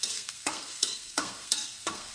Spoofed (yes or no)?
yes